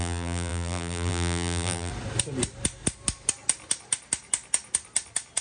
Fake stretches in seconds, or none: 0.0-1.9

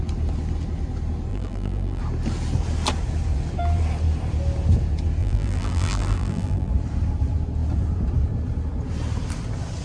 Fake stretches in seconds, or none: 1.3-2.0; 5.2-6.7

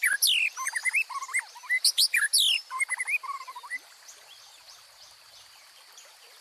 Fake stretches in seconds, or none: none

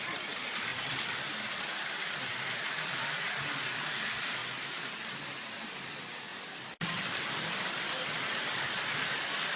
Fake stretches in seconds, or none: 0.0-4.4; 5.2-6.3; 6.8-9.6

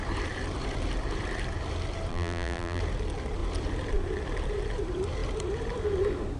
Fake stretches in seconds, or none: 2.1-2.8